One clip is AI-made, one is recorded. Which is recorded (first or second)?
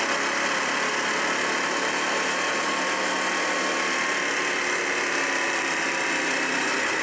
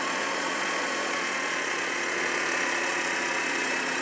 first